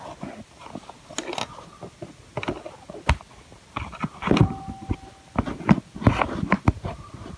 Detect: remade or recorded recorded